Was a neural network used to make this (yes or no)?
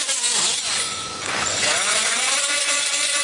yes